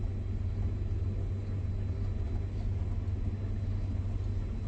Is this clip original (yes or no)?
yes